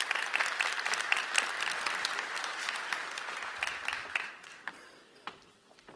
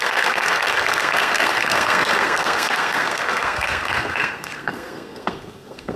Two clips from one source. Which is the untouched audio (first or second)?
first